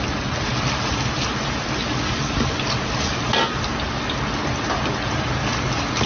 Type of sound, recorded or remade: recorded